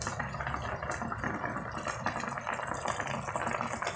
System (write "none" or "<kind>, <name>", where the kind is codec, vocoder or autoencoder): none